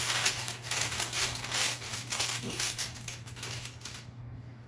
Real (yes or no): no